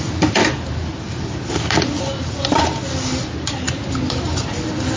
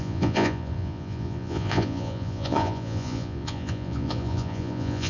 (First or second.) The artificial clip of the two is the second